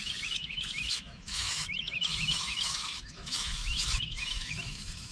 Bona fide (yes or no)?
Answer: no